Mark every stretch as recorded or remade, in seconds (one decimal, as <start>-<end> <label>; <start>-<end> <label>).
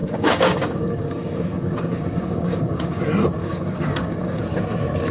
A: 0.0-3.0 remade; 3.0-3.4 recorded; 3.4-4.4 remade; 4.4-5.1 recorded